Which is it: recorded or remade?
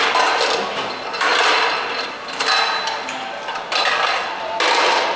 recorded